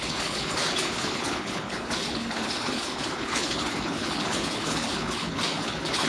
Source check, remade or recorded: remade